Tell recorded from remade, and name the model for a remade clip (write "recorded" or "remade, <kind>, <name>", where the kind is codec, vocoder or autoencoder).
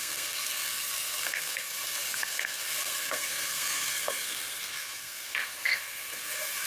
remade, codec, SNAC